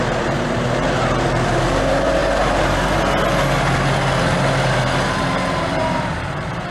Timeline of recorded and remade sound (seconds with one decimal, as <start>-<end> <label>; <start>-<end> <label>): 0.0-2.2 remade; 2.2-5.6 recorded; 5.6-6.7 remade